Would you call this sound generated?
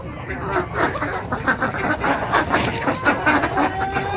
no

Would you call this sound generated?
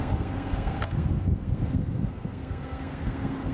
yes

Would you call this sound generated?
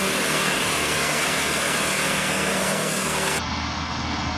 yes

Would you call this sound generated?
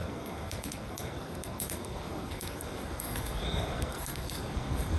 yes